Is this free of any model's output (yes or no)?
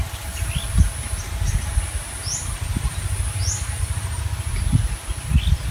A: yes